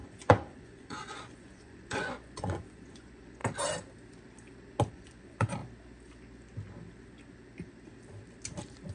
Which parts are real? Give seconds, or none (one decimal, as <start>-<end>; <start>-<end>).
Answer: 3.4-4.9; 5.6-8.9